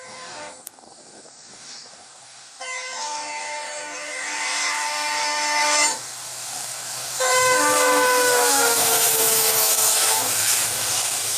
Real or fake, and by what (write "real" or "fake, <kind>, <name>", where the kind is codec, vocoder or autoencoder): fake, codec, DAC